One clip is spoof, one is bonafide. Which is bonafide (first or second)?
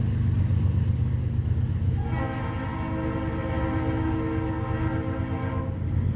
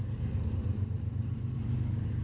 first